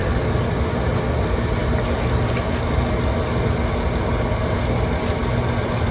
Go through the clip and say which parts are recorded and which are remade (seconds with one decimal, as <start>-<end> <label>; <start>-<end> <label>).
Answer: 0.0-5.9 recorded